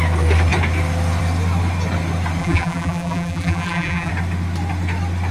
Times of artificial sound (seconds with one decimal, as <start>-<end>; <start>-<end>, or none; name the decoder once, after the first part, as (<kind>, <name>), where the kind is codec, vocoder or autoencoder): 2.4-4.1 (vocoder, BigVGAN v2)